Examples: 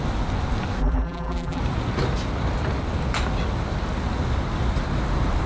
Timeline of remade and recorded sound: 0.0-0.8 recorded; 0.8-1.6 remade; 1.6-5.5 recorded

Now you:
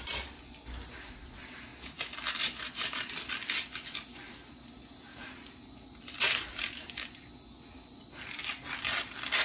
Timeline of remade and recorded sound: 0.0-1.7 recorded; 1.7-3.3 remade; 3.3-5.1 recorded; 5.1-6.8 remade; 6.8-9.4 recorded

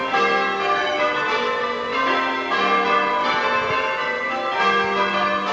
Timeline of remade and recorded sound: 0.0-5.5 recorded

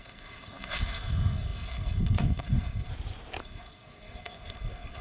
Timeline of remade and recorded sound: 0.0-2.9 remade; 2.9-3.4 recorded; 3.4-5.0 remade

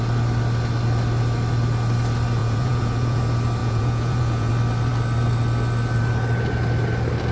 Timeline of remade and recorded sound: 0.0-2.4 recorded; 2.4-3.2 remade; 3.2-3.6 recorded; 3.6-4.5 remade; 4.5-7.3 recorded

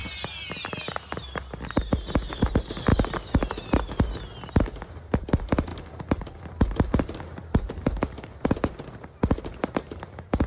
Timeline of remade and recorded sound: 0.0-2.3 recorded; 2.3-2.9 remade; 2.9-4.6 recorded; 4.6-10.5 remade

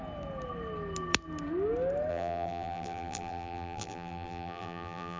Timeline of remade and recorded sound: 0.0-2.1 recorded; 2.1-5.2 remade